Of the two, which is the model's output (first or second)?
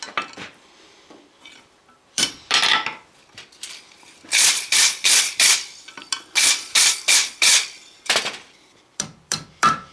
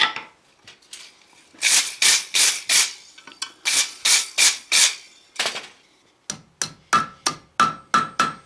first